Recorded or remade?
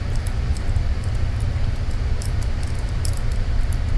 remade